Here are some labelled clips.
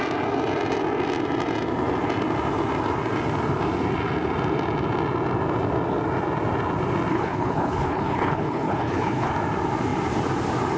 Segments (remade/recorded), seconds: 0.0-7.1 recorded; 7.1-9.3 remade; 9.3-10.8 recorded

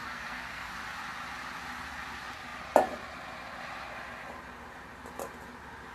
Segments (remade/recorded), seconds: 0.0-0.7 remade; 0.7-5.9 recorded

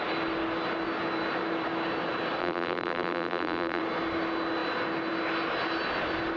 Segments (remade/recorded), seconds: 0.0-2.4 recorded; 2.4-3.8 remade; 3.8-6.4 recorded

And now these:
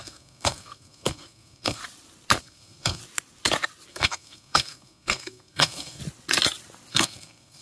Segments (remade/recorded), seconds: 0.0-1.8 remade; 1.8-2.4 recorded; 2.4-3.0 remade; 3.0-3.9 recorded; 3.9-6.0 remade; 6.0-6.9 recorded; 6.9-7.6 remade

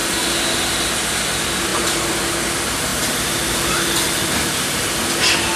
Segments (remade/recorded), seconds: 0.0-2.9 recorded; 2.9-5.1 remade; 5.1-5.6 recorded

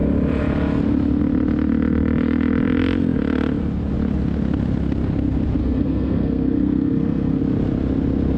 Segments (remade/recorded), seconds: 0.0-5.6 recorded; 5.6-7.4 remade; 7.4-8.4 recorded

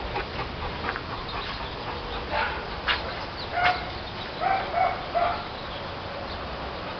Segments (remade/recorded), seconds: 0.0-7.0 recorded

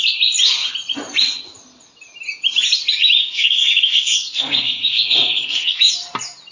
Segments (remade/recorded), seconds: 0.0-3.2 recorded; 3.2-5.9 remade; 5.9-6.5 recorded